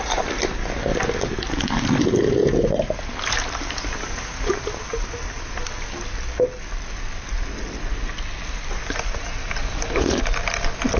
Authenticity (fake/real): real